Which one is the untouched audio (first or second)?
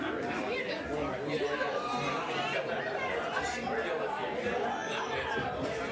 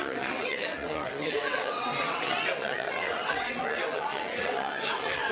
first